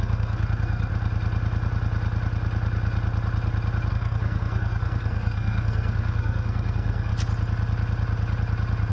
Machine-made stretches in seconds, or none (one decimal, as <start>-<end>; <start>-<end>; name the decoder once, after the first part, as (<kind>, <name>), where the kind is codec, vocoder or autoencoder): 0.0-0.9 (codec, SNAC); 3.9-7.1